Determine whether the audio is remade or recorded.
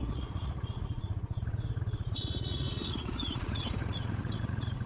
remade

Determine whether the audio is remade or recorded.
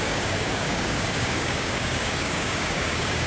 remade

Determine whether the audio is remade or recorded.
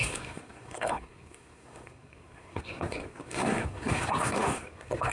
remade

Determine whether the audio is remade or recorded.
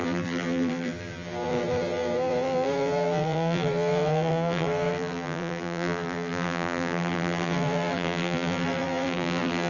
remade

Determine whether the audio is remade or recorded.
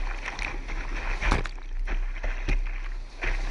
recorded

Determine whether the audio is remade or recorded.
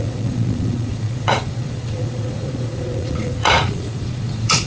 remade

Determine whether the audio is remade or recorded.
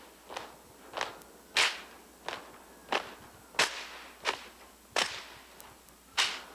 recorded